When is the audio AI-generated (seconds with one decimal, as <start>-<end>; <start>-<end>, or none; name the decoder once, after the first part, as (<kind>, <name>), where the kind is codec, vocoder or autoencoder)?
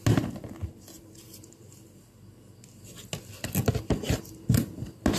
none